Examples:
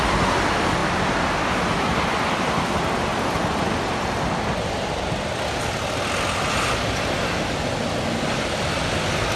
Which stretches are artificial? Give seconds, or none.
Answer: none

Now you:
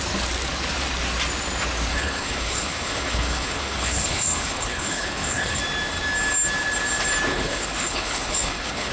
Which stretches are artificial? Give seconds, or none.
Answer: 1.9-5.6 (codec, HILCodec); 7.3-8.9

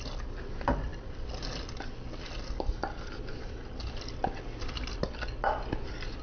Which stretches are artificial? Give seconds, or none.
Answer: none

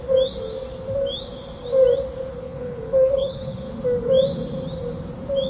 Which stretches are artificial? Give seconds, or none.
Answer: 2.3-3.7 (codec, HILCodec)

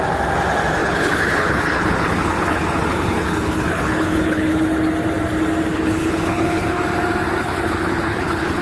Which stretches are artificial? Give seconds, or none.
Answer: 0.8-4.6 (codec, HILCodec); 5.7-6.8; 7.4-8.6

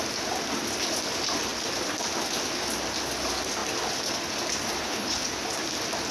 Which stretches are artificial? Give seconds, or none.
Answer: 4.8-5.3 (codec, HILCodec)

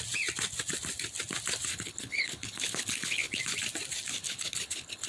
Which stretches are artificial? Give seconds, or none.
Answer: 1.7-3.4 (codec, HILCodec); 4.1-5.1